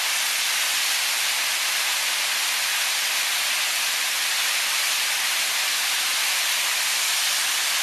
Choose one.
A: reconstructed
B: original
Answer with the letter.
B